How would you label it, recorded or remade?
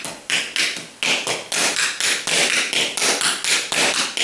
recorded